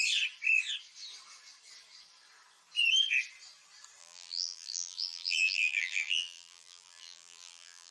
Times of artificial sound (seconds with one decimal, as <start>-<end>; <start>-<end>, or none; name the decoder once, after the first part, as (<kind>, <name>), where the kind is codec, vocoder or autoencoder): 4.0-7.9 (vocoder, BigVGAN v2)